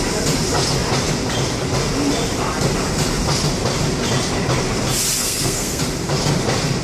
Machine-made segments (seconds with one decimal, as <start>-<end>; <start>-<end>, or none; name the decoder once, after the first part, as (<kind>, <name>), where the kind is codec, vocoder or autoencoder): 5.2-5.8 (codec, SNAC)